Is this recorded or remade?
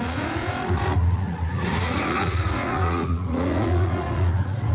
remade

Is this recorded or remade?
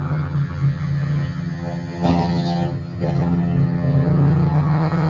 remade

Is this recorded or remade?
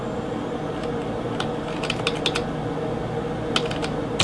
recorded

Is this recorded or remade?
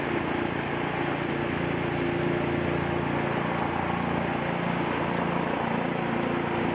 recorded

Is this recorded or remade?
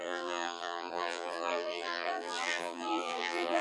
remade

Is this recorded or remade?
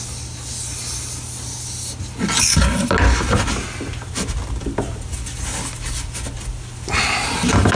recorded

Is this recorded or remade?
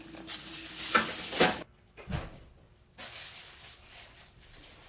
recorded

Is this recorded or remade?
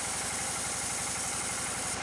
recorded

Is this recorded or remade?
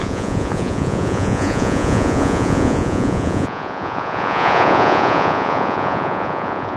remade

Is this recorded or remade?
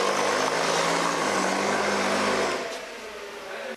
recorded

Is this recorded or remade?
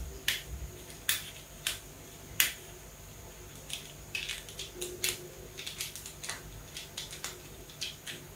remade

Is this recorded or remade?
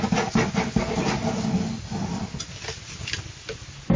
recorded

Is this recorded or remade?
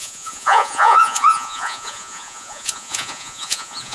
remade